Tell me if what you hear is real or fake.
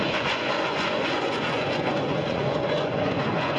fake